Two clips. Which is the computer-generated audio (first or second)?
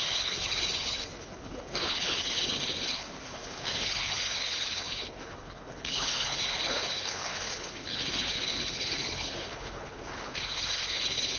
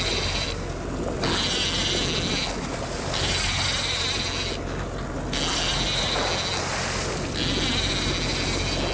first